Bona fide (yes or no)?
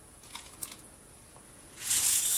no